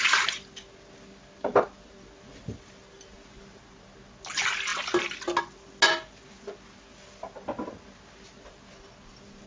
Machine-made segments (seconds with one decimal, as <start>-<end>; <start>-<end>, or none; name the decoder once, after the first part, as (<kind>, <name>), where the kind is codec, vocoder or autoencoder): none